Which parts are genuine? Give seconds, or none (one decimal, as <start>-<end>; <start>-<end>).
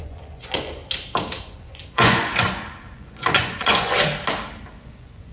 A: 0.8-1.4; 4.1-4.7